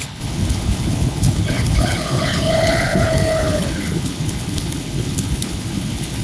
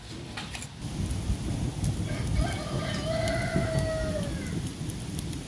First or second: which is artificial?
first